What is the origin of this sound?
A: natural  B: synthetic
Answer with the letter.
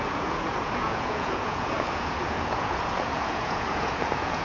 B